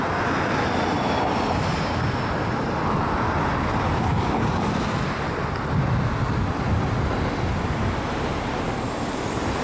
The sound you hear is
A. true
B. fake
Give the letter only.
A